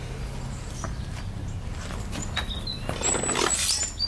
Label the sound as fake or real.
real